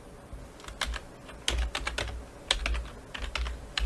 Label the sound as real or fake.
real